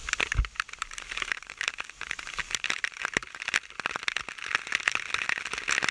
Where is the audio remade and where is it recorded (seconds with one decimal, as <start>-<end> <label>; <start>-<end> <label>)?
0.0-0.8 recorded; 0.8-2.4 remade; 2.4-5.9 recorded